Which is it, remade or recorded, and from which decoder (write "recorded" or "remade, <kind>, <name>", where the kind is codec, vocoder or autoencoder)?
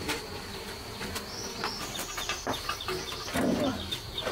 recorded